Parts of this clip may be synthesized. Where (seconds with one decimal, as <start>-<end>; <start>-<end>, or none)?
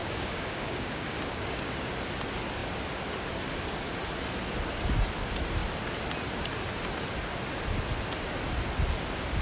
0.0-1.9